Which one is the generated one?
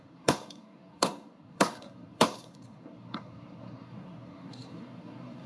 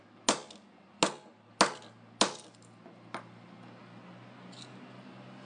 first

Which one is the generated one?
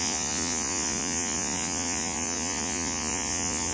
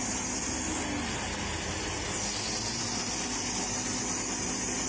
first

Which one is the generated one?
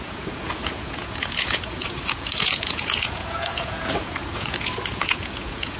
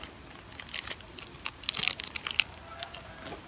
first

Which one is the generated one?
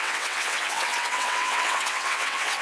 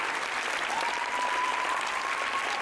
first